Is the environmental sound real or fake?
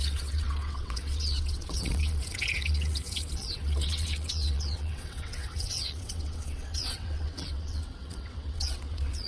fake